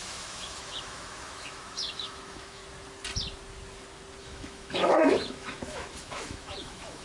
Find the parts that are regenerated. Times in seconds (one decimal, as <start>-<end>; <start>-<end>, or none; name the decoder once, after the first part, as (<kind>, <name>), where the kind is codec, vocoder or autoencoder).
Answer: 0.0-2.6 (autoencoder, DAC-VAE); 4.2-7.0